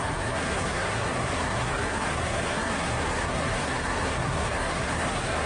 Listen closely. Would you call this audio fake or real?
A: fake